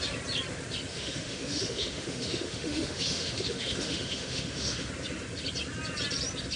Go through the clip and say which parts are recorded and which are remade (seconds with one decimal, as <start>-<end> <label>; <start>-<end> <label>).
0.0-0.9 recorded; 0.9-4.9 remade; 4.9-6.6 recorded